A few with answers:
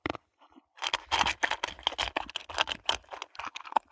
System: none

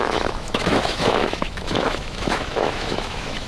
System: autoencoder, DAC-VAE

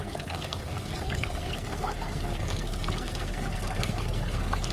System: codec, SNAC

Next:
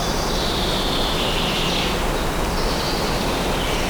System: none